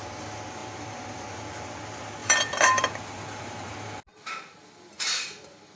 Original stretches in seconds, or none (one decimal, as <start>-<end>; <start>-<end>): 0.0-0.6; 1.3-2.2; 4.0-5.8